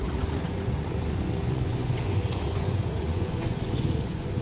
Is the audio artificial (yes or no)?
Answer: yes